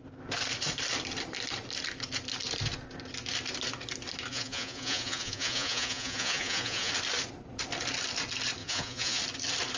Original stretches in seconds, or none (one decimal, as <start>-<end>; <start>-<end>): 0.0-4.3; 6.9-8.6; 9.2-9.8